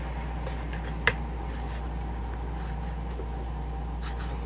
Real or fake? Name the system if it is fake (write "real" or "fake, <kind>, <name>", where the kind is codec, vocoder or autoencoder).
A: fake, vocoder, BigVGAN v2